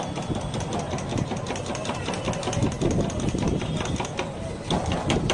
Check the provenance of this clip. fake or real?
fake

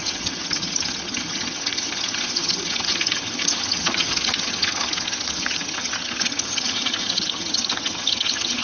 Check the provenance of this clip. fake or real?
fake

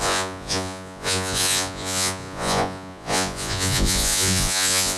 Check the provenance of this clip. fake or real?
fake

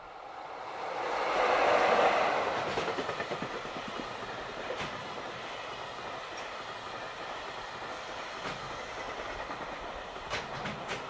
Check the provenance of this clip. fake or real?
real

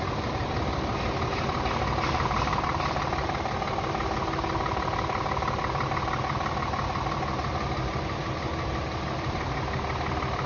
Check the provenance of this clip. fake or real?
real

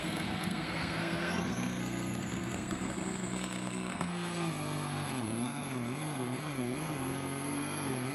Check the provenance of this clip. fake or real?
fake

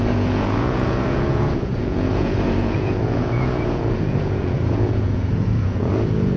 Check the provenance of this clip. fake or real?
fake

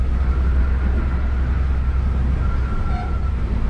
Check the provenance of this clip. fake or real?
real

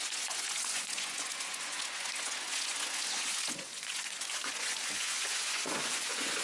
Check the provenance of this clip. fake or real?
fake